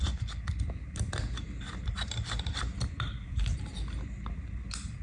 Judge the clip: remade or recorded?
remade